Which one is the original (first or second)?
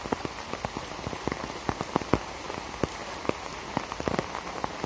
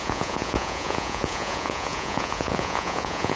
first